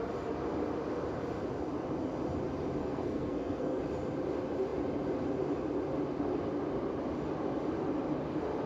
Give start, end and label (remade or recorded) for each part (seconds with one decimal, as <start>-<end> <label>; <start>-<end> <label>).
0.0-2.8 recorded; 2.8-3.8 remade; 3.8-8.7 recorded